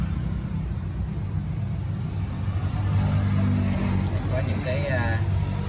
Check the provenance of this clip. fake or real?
real